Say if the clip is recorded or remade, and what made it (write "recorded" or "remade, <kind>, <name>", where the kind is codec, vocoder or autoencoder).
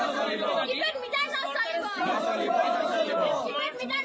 recorded